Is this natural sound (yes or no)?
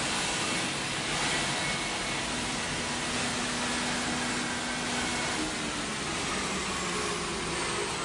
yes